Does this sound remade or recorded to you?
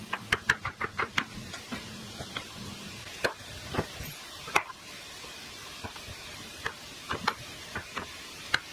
remade